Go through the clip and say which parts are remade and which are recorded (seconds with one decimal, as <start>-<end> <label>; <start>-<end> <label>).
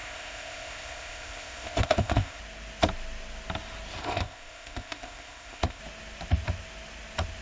0.0-2.4 remade; 2.4-4.0 recorded; 4.0-5.8 remade; 5.8-7.4 recorded